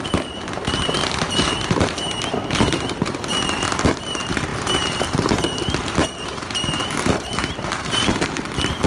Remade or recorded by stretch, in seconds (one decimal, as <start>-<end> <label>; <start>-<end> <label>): 0.0-8.9 remade